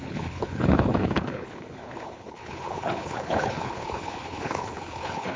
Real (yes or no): no